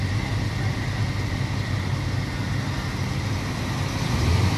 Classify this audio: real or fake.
real